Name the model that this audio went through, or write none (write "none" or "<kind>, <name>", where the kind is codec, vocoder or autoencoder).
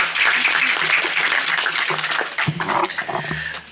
none